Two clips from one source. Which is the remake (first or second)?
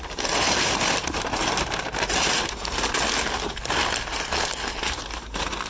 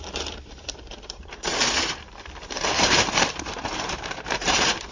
second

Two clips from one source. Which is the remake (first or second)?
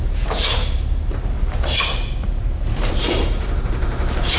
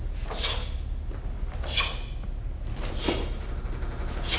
first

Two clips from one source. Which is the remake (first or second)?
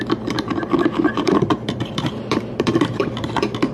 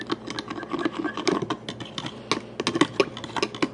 first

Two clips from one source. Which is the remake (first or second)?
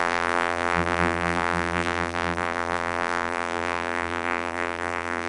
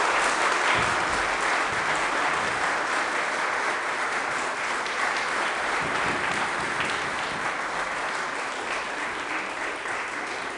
first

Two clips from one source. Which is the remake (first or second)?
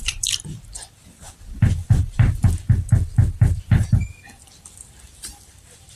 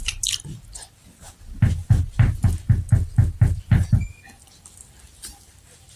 first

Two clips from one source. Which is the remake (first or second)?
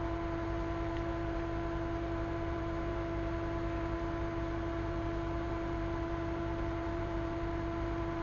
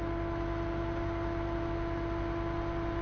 first